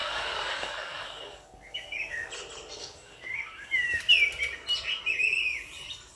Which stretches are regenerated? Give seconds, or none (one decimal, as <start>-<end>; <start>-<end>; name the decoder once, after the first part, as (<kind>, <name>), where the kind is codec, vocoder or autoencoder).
0.0-2.3 (codec, DAC); 2.8-4.0